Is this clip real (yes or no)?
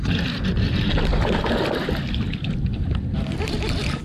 yes